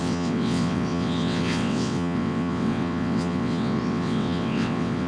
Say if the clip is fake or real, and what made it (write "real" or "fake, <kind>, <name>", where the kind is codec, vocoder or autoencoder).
fake, vocoder, WaveNeXt